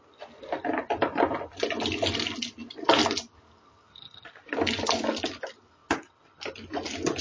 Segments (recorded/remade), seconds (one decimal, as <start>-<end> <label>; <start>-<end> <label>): 0.0-7.2 recorded